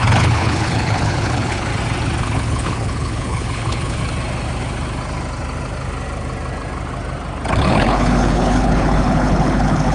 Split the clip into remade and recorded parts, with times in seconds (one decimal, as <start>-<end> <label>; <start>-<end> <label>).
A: 0.0-1.7 remade; 1.7-2.2 recorded; 2.2-4.0 remade; 4.0-7.5 recorded; 7.5-9.9 remade